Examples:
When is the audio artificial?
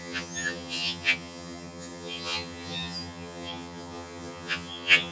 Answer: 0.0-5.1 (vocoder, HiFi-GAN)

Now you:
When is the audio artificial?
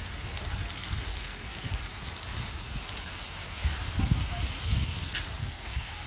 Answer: 1.1-1.8 (codec, SNAC); 5.4-6.1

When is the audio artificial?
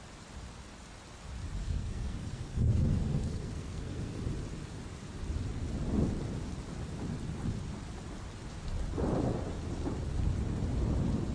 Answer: 1.6-4.2 (codec, SNAC)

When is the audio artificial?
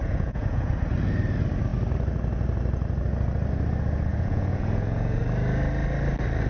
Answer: 0.0-0.7 (vocoder, Vocos); 4.1-5.2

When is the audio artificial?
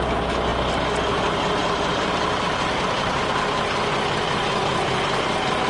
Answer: 1.6-3.9 (vocoder, BigVGAN v2)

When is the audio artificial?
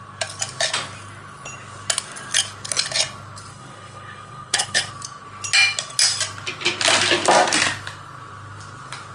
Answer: 3.5-4.9 (codec, HILCodec)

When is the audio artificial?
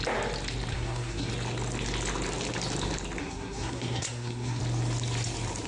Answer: 0.7-1.3 (codec, SNAC); 3.2-4.6